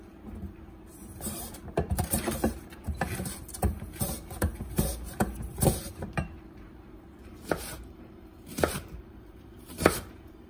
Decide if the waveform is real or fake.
fake